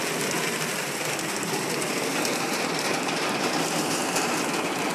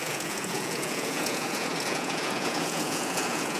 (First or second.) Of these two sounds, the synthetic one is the second